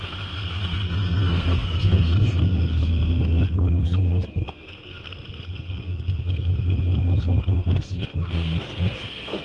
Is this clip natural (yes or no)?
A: no